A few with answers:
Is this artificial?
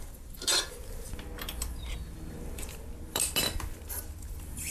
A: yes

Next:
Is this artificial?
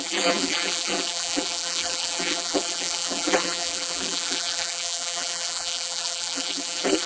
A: yes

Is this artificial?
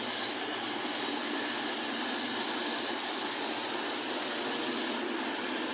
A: no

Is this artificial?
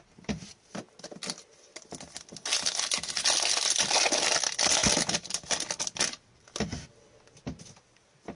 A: no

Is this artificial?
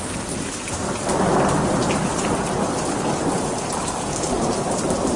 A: yes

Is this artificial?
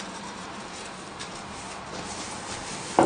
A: yes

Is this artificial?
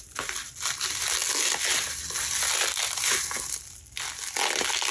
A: no